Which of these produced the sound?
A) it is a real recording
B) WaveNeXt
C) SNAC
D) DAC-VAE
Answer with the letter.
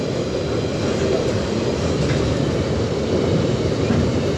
A